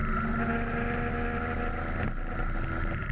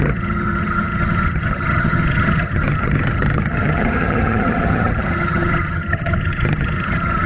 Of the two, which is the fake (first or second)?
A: second